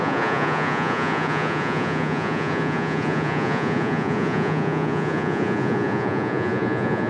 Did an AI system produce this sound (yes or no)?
yes